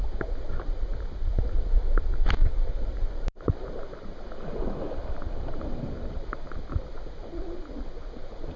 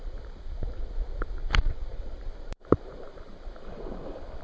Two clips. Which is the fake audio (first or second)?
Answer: second